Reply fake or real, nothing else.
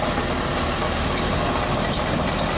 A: real